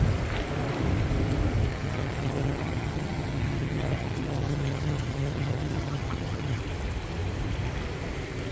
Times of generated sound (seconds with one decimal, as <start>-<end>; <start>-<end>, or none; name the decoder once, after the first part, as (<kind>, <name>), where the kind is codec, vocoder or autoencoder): 1.7-6.6 (vocoder, HiFi-GAN)